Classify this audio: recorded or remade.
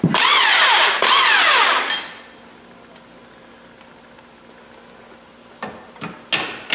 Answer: recorded